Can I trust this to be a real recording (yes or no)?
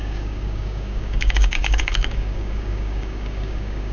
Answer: no